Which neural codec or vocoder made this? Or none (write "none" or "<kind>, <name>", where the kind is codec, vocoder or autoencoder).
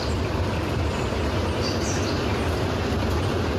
none